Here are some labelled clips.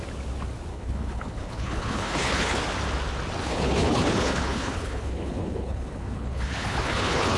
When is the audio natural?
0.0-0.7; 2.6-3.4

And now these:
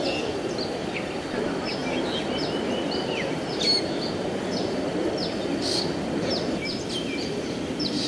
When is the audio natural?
0.0-8.1

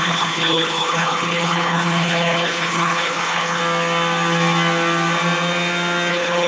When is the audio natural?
3.6-6.1

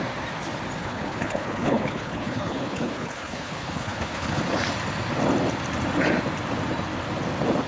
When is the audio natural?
0.0-0.8; 4.4-7.7

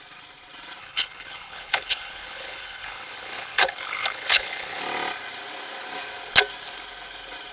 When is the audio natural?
0.0-0.8; 4.8-7.5

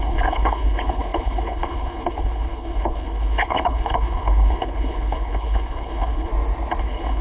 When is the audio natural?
6.3-6.8

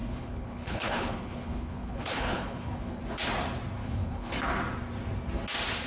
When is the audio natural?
3.0-3.8; 4.3-5.9

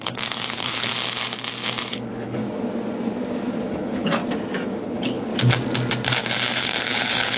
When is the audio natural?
0.9-1.9; 2.4-3.7; 4.2-4.8; 5.3-6.6